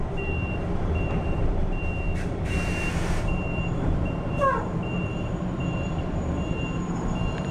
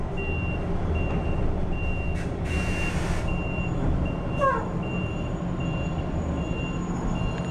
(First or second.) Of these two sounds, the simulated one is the first